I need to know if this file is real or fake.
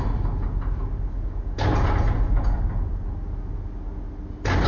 real